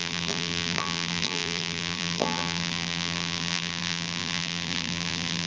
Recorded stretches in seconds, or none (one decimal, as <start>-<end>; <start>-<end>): none